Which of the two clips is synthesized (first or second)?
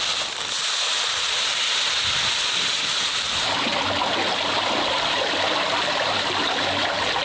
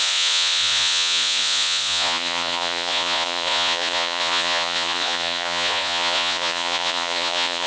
second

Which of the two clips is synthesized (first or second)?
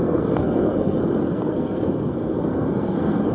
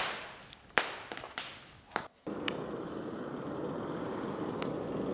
first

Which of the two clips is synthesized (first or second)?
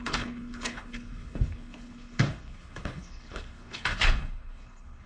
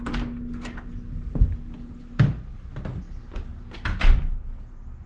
first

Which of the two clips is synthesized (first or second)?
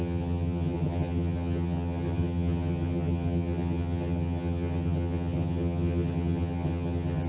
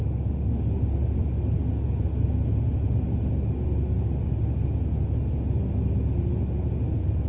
first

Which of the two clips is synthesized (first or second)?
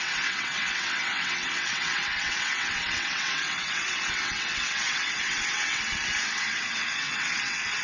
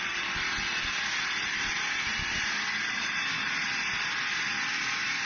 first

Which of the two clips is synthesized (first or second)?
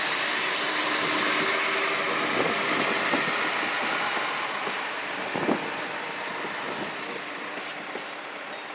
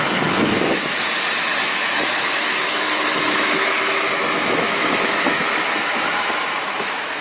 second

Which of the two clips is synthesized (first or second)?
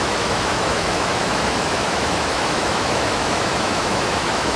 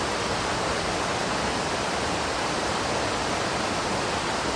first